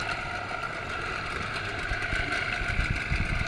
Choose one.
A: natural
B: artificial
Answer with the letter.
A